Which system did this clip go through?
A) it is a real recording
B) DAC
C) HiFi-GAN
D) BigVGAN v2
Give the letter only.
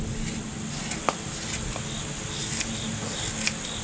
A